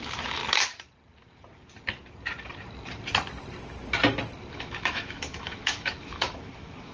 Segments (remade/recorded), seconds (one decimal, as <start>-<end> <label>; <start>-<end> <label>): 0.0-0.4 remade; 0.4-4.5 recorded; 4.5-6.9 remade